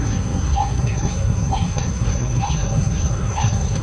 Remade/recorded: remade